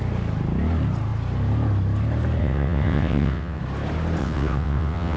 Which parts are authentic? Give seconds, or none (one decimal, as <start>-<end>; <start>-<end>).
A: 0.0-2.4; 3.6-4.2